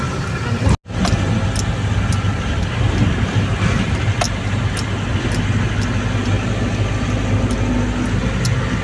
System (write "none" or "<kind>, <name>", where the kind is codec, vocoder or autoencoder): none